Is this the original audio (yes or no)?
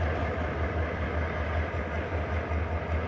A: yes